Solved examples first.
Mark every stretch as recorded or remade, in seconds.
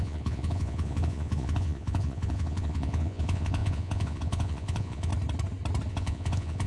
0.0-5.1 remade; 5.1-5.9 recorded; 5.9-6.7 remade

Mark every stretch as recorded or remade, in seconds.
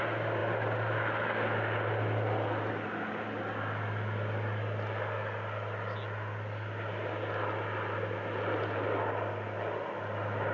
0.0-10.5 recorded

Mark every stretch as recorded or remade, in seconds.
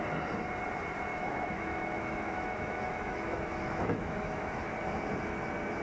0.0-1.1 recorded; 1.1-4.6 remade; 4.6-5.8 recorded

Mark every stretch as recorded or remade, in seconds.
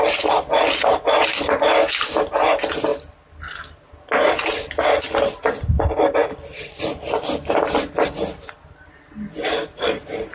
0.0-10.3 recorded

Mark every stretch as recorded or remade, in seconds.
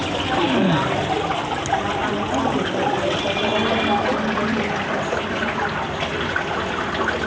0.0-2.0 remade; 2.0-2.8 recorded; 2.8-4.1 remade; 4.1-4.9 recorded; 4.9-7.3 remade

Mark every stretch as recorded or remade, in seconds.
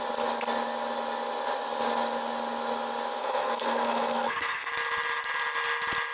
0.0-3.2 recorded; 3.2-4.7 remade; 4.7-6.1 recorded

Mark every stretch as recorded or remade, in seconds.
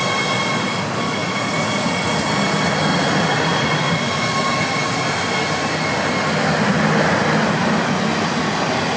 0.0-1.2 recorded; 1.2-2.3 remade; 2.3-2.9 recorded; 2.9-3.9 remade; 3.9-9.0 recorded